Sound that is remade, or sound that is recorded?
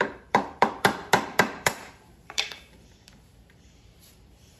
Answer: remade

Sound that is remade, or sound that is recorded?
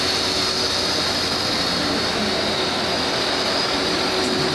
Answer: recorded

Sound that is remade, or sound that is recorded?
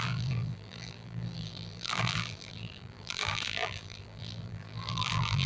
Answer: remade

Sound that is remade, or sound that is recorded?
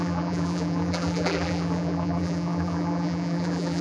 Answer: remade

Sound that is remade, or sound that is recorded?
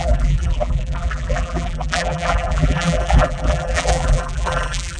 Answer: remade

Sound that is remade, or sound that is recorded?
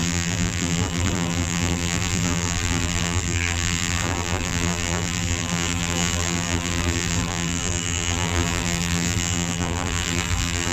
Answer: remade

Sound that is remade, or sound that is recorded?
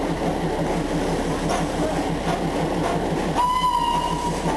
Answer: recorded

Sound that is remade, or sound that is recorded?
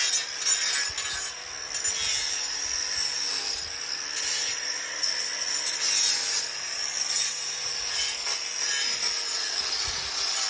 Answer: recorded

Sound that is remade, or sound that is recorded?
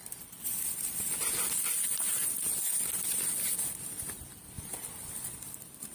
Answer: remade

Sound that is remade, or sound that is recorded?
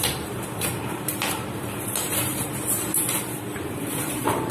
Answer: remade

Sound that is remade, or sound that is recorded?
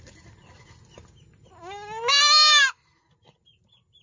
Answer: recorded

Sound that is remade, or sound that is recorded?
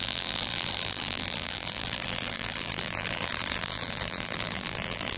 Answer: remade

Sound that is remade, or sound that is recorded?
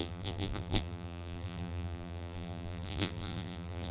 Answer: remade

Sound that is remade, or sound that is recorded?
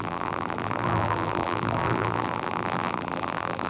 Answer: remade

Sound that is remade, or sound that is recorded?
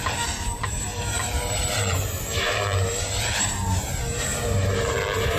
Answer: remade